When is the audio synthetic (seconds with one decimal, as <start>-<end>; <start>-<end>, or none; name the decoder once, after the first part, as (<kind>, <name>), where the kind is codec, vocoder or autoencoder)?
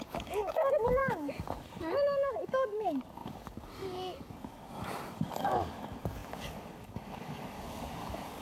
0.0-8.4 (codec, DAC)